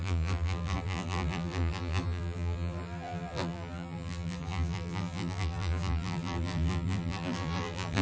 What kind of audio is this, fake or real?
fake